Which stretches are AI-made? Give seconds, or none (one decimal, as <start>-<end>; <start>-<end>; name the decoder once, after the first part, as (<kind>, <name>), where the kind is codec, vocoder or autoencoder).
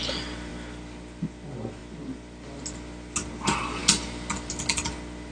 none